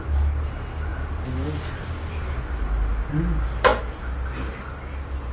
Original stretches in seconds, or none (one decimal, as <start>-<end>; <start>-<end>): 0.0-5.3